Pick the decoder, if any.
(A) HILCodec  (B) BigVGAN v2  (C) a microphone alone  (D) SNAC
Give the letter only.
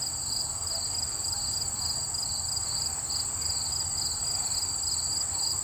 C